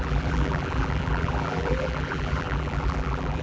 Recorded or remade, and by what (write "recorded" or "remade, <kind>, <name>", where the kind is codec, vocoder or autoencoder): remade, vocoder, BigVGAN v2